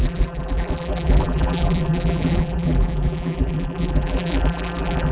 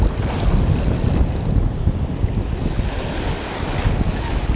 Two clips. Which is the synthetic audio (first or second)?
first